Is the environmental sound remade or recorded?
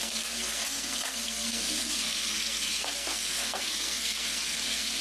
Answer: remade